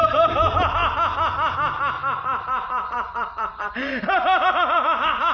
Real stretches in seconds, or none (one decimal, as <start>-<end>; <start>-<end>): 0.8-1.5